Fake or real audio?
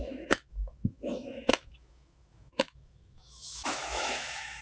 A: fake